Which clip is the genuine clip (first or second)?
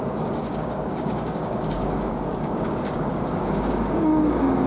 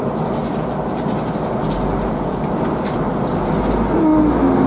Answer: second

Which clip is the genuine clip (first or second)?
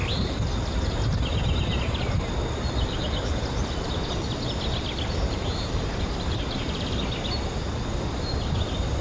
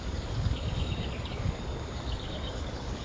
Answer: first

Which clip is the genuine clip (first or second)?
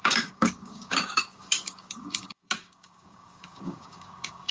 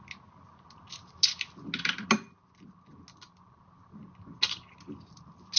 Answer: second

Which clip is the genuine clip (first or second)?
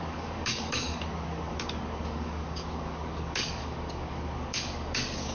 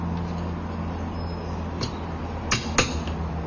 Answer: second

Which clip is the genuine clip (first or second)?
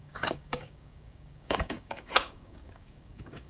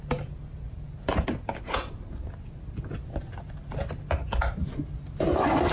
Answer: second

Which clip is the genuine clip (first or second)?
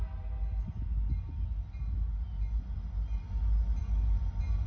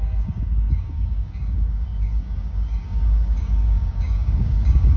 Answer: first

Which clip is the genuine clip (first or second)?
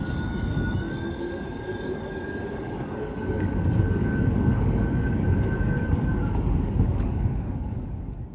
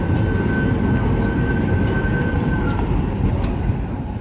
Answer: second